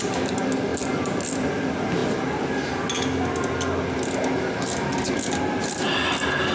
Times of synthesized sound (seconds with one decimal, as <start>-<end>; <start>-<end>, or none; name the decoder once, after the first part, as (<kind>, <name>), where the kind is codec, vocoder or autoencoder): 0.7-1.5 (vocoder, BigVGAN v2)